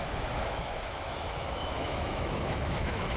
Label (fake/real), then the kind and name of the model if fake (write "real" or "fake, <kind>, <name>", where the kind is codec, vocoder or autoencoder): fake, autoencoder, DAC-VAE